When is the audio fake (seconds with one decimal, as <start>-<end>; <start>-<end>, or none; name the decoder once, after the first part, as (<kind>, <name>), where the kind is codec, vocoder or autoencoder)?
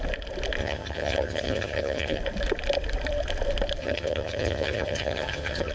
0.6-2.2 (vocoder, HiFi-GAN); 3.8-5.7